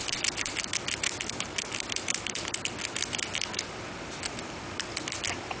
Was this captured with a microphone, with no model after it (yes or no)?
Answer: no